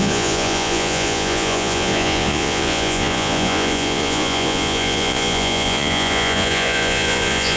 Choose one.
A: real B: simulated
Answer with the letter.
B